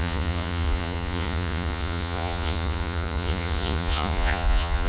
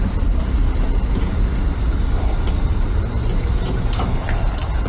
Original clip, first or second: second